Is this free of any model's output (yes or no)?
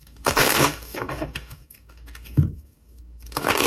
no